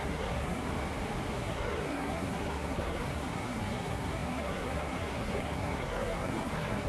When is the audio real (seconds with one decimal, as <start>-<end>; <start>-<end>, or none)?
0.7-1.3